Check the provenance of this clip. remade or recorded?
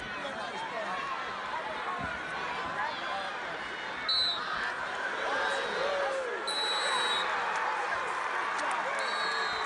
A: recorded